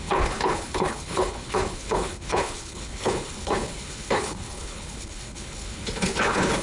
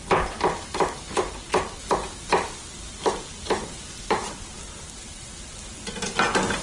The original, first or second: second